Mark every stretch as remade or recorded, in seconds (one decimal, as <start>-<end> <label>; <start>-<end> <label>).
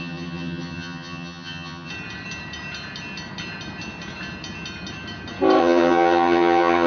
0.0-1.9 remade; 1.9-5.6 recorded; 5.6-6.9 remade